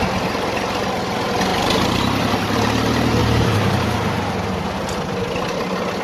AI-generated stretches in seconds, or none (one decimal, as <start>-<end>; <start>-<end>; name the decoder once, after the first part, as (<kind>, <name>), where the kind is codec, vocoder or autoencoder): 1.5-2.0 (vocoder, BigVGAN v2); 3.2-4.3

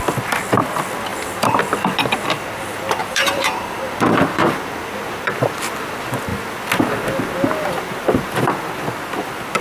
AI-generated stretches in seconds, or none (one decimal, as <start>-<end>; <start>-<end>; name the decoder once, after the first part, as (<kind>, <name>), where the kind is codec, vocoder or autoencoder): 1.1-1.6 (vocoder, BigVGAN v2); 3.0-4.4

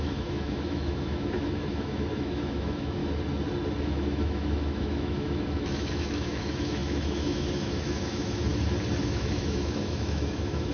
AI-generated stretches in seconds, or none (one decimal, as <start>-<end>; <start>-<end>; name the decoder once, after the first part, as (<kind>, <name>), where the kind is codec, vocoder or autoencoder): 0.0-3.0 (autoencoder, DAC-VAE); 3.8-8.5; 9.0-10.7

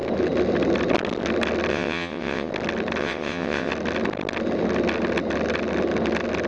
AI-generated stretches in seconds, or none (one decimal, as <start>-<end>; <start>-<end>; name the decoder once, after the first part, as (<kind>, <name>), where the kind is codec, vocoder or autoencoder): 1.7-2.5 (vocoder, WaveNeXt); 3.0-3.7